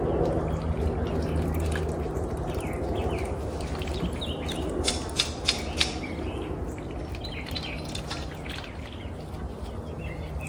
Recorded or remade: recorded